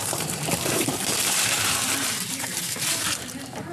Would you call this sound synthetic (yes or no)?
yes